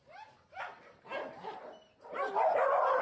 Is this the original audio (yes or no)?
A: yes